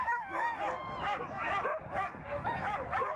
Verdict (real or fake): fake